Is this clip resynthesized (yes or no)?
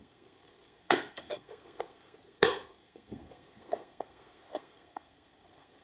yes